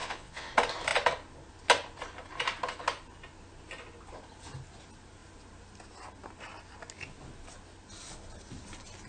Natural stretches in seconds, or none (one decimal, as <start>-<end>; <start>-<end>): 0.5-9.1